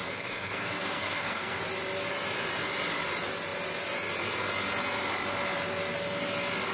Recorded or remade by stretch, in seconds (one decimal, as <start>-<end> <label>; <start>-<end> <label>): 0.0-1.6 remade; 1.6-6.7 recorded